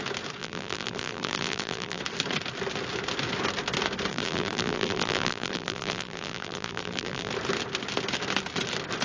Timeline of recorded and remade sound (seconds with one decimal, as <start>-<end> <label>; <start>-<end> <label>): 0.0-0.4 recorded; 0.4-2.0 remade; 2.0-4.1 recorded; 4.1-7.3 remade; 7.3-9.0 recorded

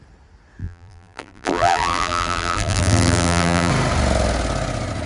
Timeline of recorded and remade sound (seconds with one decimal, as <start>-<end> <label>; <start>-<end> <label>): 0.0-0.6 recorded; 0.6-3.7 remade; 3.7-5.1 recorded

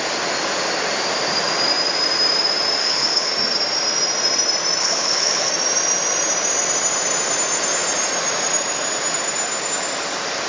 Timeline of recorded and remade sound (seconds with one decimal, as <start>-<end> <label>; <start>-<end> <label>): 0.0-2.8 recorded; 2.8-3.3 remade; 3.3-4.8 recorded; 4.8-5.5 remade; 5.5-10.5 recorded

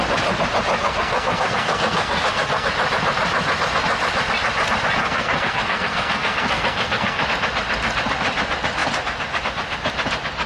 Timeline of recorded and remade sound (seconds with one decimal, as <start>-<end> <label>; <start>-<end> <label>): 0.0-0.8 recorded; 0.8-2.7 remade; 2.7-5.0 recorded; 5.0-7.2 remade; 7.2-10.5 recorded

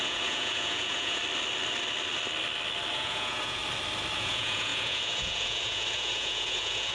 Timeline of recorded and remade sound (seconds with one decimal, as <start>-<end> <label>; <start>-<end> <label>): 0.0-1.2 remade; 1.2-2.9 recorded; 2.9-3.6 remade; 3.6-4.2 recorded; 4.2-6.9 remade

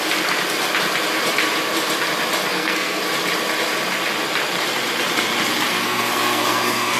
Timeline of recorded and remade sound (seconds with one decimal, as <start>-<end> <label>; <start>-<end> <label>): 0.0-2.5 recorded; 2.5-3.0 remade; 3.0-5.7 recorded; 5.7-7.0 remade